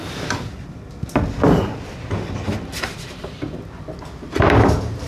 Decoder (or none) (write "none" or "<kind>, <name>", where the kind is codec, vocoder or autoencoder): none